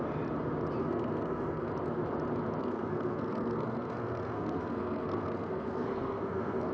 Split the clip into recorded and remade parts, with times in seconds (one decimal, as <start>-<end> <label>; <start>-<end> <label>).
0.0-0.8 recorded; 0.8-1.7 remade; 1.7-2.6 recorded; 2.6-6.7 remade